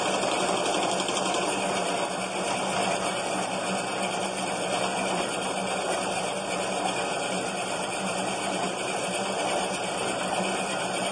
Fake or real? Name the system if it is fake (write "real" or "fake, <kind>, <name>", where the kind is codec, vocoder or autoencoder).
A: real